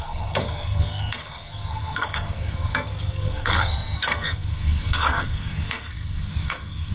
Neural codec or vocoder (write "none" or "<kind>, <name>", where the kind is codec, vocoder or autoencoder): codec, SNAC